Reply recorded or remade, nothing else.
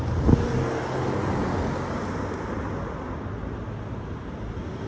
recorded